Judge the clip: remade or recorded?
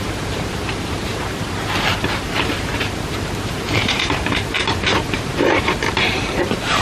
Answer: remade